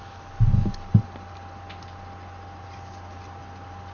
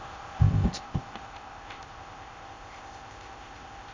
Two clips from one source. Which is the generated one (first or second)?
second